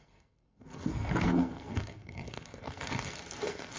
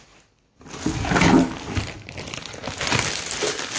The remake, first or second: first